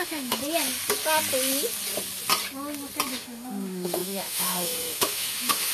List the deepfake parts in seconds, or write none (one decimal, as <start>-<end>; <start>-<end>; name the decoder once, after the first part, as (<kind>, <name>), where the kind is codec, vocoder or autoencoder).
0.0-0.4 (autoencoder, DAC-VAE); 3.1-5.7